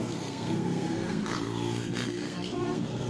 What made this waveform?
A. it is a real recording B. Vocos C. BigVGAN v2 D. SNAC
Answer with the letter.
D